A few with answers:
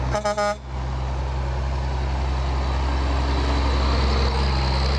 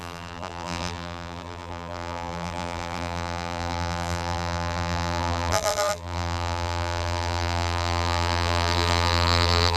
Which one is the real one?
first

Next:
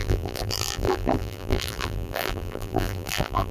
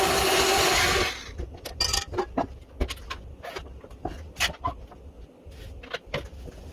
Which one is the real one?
second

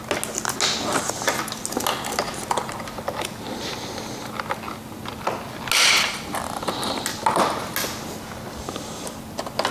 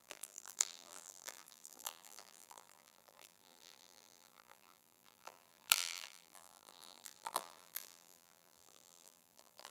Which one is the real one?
first